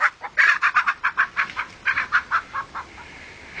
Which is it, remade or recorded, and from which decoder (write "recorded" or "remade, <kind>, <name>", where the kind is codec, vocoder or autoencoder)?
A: remade, vocoder, BigVGAN v2